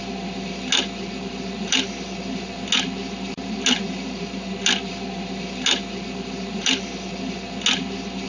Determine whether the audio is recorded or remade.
recorded